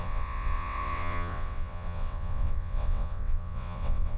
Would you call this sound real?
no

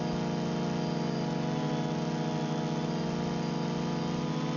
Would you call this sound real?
yes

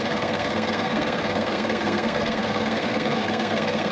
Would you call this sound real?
no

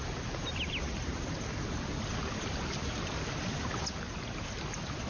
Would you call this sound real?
yes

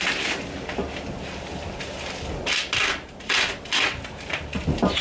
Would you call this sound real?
yes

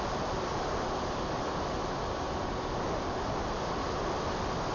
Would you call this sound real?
yes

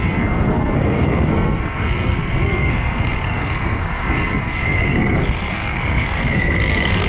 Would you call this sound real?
no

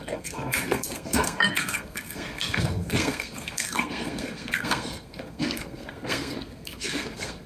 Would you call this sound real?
no